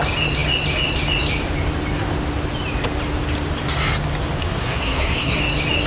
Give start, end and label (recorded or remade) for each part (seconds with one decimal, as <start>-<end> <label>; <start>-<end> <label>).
0.0-4.4 recorded; 4.4-5.4 remade; 5.4-5.9 recorded